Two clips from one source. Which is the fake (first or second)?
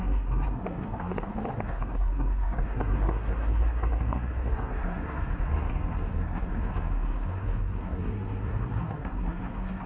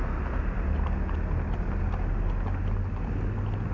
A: first